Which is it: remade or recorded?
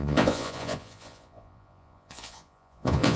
remade